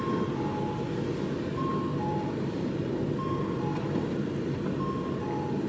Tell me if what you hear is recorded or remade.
recorded